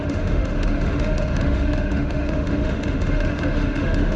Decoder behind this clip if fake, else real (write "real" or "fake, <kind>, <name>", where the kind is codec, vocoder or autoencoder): fake, autoencoder, DAC-VAE